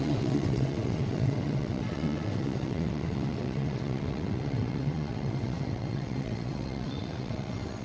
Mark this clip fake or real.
fake